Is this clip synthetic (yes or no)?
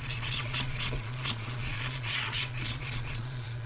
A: yes